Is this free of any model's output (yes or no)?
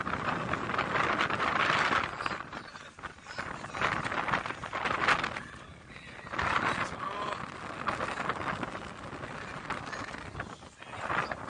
yes